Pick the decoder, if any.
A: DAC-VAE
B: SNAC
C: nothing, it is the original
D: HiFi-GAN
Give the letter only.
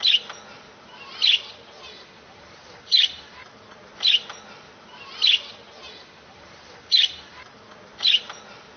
C